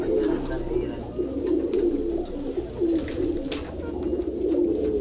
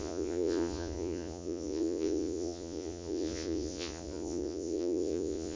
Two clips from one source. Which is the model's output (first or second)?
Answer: second